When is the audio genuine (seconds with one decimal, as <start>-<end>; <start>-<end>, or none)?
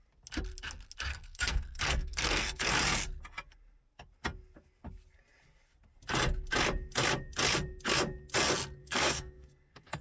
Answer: 0.0-1.1; 2.7-8.8